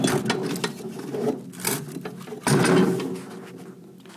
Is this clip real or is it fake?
real